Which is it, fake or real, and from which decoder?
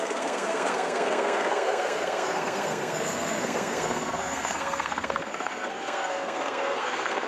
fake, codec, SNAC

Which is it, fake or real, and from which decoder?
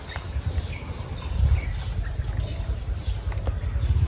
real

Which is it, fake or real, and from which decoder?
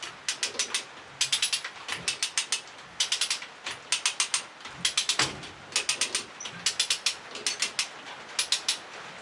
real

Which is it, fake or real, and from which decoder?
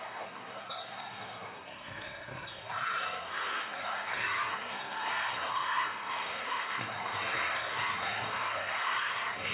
fake, codec, SNAC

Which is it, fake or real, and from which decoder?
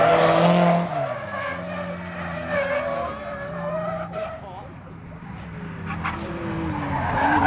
real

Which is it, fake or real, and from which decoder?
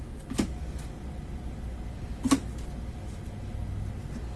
real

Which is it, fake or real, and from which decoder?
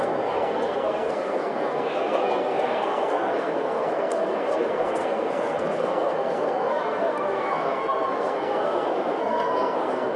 fake, codec, SNAC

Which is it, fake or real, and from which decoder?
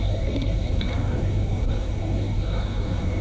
fake, codec, SNAC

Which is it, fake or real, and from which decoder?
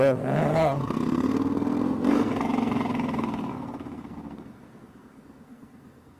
fake, codec, SNAC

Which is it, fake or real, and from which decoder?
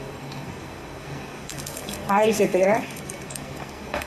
fake, codec, SNAC